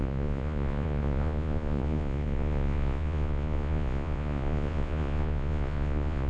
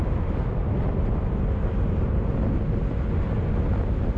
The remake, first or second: first